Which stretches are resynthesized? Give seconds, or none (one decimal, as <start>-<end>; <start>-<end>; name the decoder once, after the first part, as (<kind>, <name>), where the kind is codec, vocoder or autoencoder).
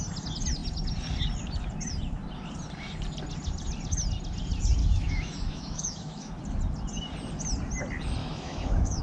4.8-6.3 (autoencoder, DAC-VAE); 8.2-9.0